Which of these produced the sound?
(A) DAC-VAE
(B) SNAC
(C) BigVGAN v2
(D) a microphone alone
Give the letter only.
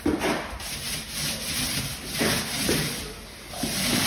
D